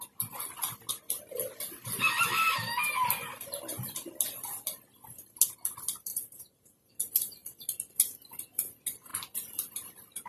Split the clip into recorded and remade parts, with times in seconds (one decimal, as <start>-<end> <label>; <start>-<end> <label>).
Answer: 0.0-6.1 recorded; 6.1-6.9 remade; 6.9-10.3 recorded